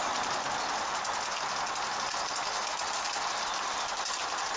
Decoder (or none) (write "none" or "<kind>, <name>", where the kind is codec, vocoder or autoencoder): none